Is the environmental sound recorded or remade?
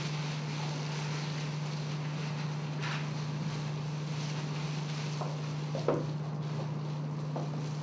recorded